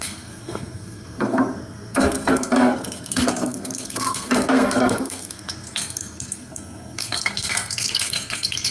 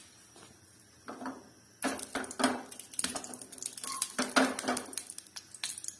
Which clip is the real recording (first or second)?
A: second